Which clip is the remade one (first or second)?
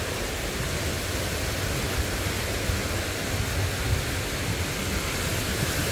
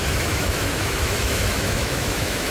second